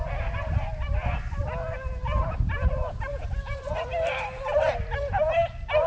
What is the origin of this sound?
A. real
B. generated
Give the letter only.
A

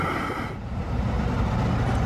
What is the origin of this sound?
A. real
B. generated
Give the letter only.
A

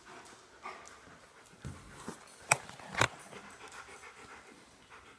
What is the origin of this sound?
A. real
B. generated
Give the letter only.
A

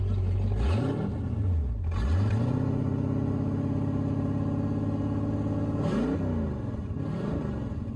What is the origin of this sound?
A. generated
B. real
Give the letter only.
B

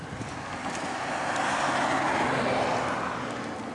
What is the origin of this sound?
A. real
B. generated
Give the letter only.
A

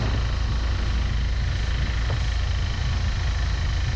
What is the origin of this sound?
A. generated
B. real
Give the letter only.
B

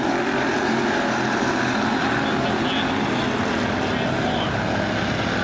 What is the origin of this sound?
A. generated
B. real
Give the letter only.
B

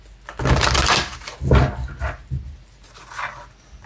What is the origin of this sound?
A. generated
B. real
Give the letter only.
B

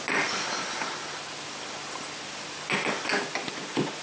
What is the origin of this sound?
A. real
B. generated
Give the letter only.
A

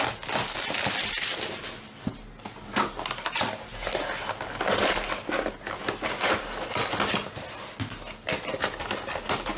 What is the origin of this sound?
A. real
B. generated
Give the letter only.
A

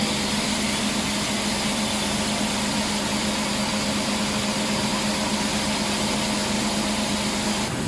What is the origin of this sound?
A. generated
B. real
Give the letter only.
B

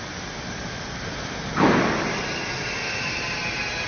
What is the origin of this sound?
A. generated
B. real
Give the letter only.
B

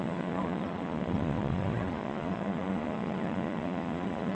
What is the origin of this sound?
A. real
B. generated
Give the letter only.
B